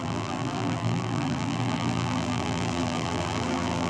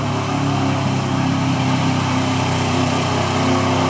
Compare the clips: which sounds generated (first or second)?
first